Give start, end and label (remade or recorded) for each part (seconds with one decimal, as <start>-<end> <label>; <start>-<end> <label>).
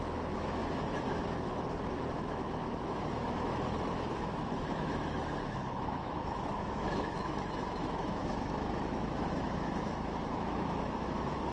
0.0-11.5 remade